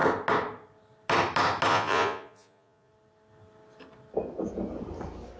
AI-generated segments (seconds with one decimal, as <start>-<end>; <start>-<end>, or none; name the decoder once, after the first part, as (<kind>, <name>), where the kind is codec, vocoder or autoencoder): 1.7-2.9 (vocoder, Vocos)